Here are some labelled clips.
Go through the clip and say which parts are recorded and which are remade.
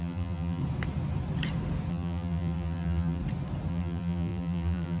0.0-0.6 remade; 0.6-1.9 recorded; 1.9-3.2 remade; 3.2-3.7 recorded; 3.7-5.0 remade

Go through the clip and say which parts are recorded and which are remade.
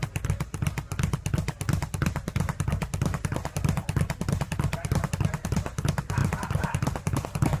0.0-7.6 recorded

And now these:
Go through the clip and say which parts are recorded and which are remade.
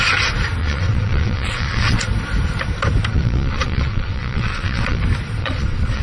0.0-0.6 recorded; 0.6-2.0 remade; 2.0-3.1 recorded; 3.1-5.0 remade; 5.0-5.4 recorded; 5.4-6.0 remade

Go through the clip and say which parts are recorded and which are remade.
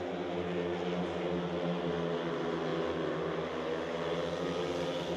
0.0-5.2 recorded